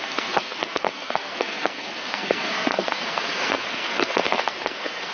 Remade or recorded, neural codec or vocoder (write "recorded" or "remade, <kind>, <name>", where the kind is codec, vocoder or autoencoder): remade, codec, SNAC